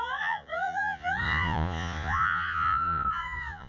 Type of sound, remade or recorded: remade